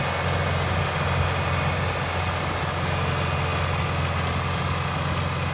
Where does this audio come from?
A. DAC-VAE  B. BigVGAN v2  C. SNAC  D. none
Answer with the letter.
D